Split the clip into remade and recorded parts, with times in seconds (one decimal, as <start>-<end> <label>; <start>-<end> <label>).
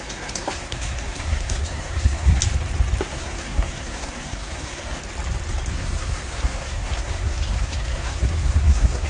0.0-2.4 remade; 2.4-3.0 recorded; 3.0-5.0 remade; 5.0-5.7 recorded; 5.7-9.1 remade